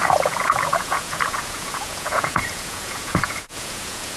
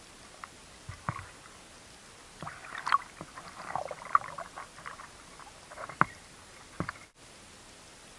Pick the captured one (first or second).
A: second